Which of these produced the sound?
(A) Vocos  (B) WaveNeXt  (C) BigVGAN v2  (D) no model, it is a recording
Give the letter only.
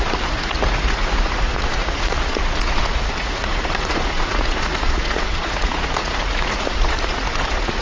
A